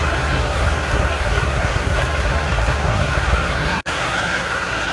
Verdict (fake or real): fake